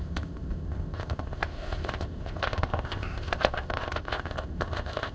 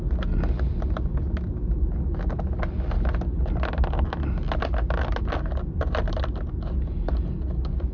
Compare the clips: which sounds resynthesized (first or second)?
first